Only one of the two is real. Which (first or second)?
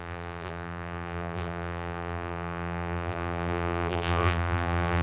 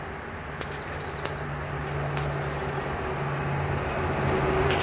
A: second